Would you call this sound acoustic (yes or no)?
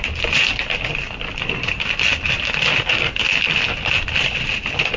no